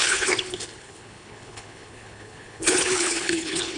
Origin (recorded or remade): remade